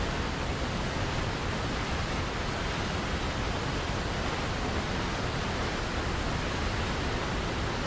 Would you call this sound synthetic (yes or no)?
no